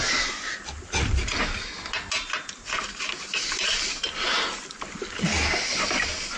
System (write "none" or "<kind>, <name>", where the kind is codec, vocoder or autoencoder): none